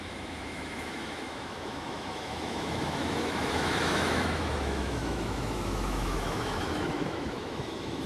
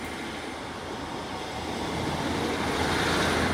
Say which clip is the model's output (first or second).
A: first